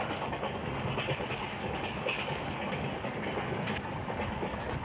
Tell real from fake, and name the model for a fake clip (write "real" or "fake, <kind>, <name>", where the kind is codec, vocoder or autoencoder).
fake, codec, DAC